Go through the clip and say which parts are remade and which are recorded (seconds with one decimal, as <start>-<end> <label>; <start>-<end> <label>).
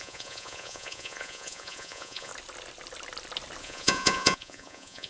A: 0.0-2.3 remade; 2.3-3.6 recorded; 3.6-5.1 remade